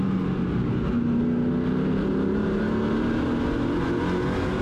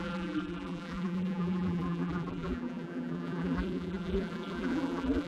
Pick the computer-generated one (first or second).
second